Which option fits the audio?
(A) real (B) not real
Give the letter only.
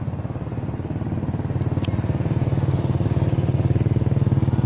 A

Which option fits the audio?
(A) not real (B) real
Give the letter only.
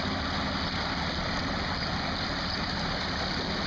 B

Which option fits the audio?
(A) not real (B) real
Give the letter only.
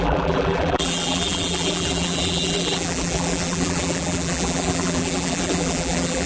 A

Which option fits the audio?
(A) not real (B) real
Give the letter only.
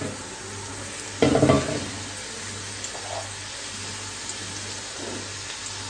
B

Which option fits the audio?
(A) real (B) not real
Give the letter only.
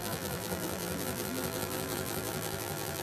B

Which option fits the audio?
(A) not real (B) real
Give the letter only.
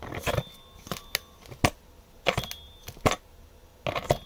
B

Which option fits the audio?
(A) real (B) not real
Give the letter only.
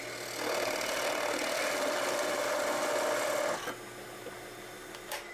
A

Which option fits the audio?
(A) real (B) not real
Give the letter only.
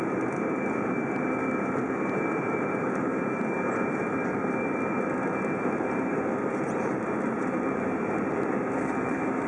B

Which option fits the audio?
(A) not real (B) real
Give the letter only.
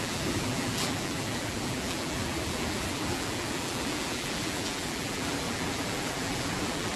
A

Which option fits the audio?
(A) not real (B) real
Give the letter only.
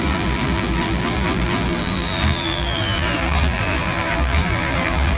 A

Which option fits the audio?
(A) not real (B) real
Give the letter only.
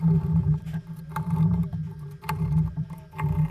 A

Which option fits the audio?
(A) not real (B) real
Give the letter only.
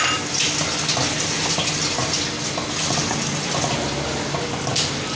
B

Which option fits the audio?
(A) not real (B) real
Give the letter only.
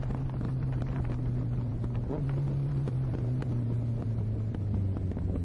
A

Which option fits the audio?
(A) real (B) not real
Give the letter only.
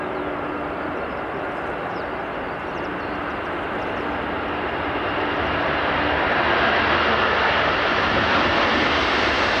A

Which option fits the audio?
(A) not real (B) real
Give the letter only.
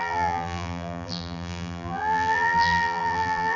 A